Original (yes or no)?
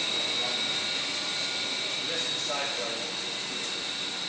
yes